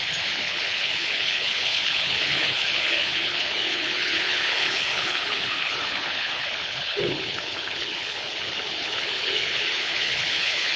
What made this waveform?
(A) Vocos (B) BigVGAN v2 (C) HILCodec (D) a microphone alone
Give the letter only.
C